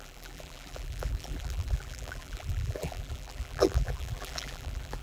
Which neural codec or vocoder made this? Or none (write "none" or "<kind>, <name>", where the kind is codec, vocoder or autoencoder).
vocoder, BigVGAN v2